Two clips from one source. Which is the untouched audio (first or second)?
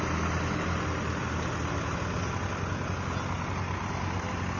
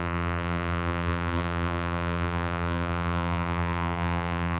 first